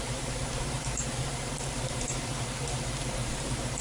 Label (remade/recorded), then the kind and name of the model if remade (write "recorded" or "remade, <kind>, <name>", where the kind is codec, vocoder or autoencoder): remade, vocoder, BigVGAN v2